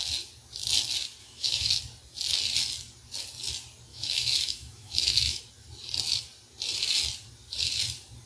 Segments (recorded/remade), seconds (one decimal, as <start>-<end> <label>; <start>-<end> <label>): 0.0-1.2 recorded; 1.2-1.7 remade; 1.7-3.9 recorded; 3.9-5.4 remade; 5.4-8.3 recorded